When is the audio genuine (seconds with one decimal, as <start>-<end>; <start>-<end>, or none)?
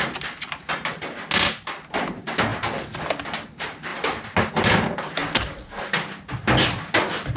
0.0-7.4